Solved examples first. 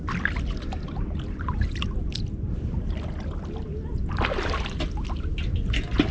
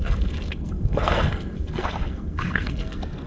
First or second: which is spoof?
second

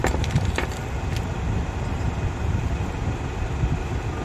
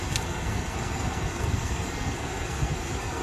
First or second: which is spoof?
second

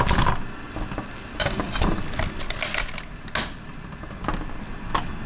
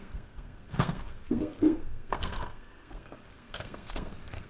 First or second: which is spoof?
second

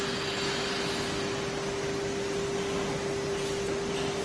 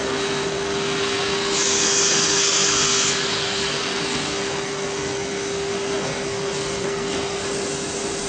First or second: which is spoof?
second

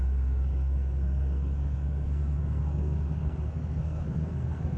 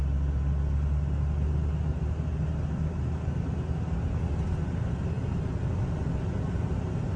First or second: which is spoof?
first